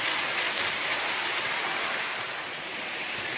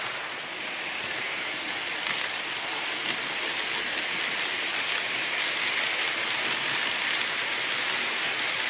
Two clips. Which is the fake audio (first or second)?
first